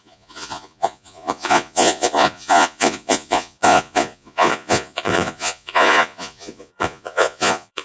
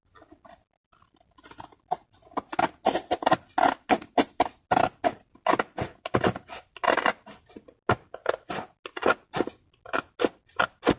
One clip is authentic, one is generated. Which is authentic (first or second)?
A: second